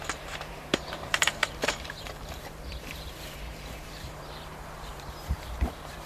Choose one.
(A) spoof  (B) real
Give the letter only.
A